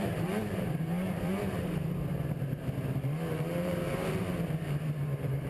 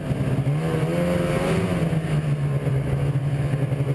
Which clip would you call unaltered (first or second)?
second